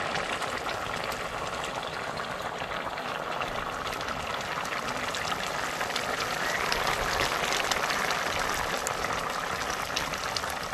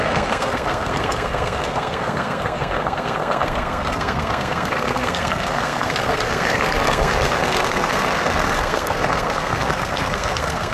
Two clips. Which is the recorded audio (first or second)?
first